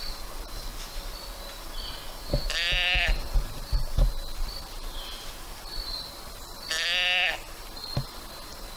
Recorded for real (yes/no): yes